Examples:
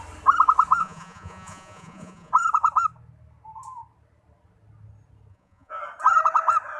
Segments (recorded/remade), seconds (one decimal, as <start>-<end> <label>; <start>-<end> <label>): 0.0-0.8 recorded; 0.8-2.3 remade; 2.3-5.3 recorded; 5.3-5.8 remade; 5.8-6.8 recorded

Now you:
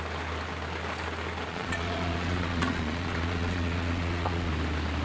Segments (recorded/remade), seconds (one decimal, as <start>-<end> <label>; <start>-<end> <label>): 0.0-1.5 recorded; 1.5-4.5 remade; 4.5-5.0 recorded

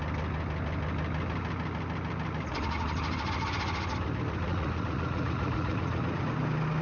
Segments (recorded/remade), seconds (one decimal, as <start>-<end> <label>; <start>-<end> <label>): 0.0-4.5 recorded; 4.5-6.3 remade; 6.3-6.8 recorded